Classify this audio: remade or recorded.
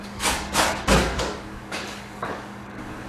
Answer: remade